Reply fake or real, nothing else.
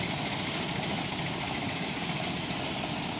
real